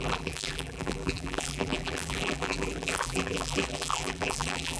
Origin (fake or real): fake